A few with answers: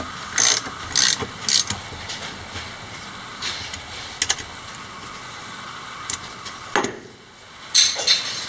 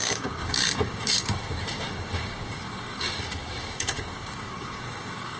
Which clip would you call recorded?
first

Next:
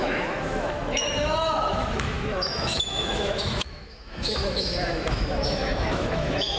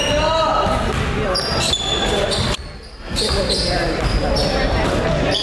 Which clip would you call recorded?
second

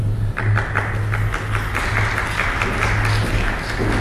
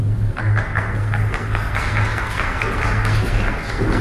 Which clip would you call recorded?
first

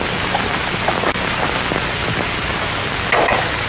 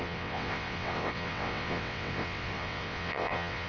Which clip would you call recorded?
first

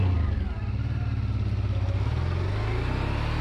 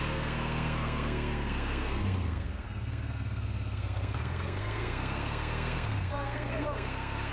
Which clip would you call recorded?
first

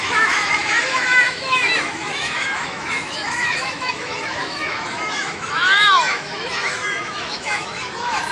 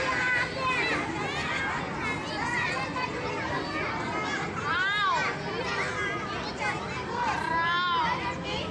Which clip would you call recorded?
second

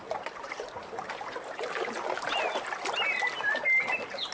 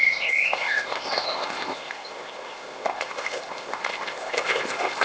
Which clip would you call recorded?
first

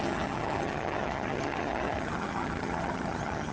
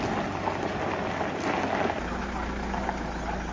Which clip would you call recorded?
second